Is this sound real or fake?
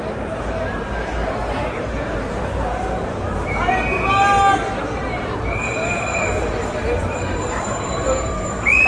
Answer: fake